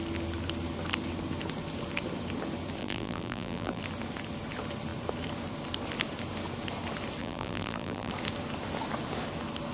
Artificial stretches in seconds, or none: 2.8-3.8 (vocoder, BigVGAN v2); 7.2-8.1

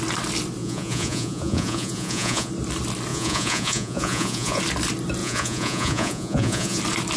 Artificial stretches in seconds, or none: 0.6-2.5 (vocoder, Vocos); 3.1-4.6; 5.2-6.8

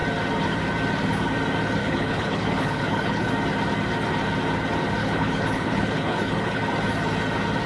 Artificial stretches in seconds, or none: 1.8-3.3 (codec, HILCodec); 5.0-6.6

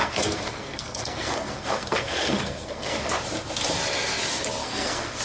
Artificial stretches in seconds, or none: 0.0-3.1 (codec, SNAC); 4.6-5.2